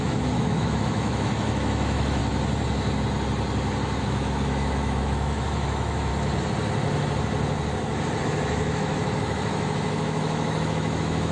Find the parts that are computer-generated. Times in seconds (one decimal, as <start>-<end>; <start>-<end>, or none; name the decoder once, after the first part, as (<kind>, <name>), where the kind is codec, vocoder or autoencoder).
0.0-2.2 (autoencoder, DAC-VAE); 4.0-6.1; 8.2-11.3